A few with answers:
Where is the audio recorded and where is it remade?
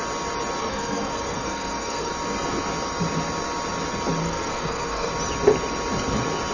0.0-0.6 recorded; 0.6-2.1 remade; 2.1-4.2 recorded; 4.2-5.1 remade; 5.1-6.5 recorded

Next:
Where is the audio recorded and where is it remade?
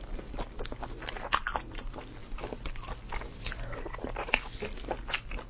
0.0-5.5 recorded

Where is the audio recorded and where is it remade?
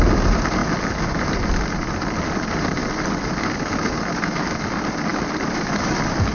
0.0-6.3 recorded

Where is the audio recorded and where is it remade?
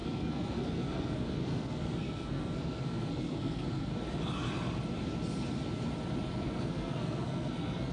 0.0-3.9 remade; 3.9-6.4 recorded; 6.4-7.9 remade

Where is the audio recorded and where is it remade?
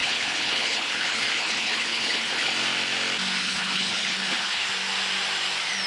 0.0-2.5 remade; 2.5-3.4 recorded; 3.4-4.7 remade; 4.7-5.9 recorded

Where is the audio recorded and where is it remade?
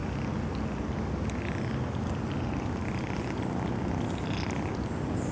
0.0-5.3 recorded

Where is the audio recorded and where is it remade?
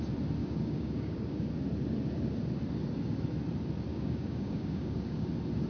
0.0-0.4 recorded; 0.4-1.5 remade; 1.5-3.9 recorded; 3.9-5.3 remade; 5.3-5.7 recorded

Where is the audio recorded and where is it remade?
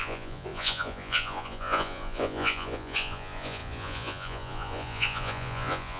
0.0-6.0 remade